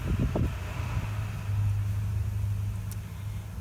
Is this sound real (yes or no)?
yes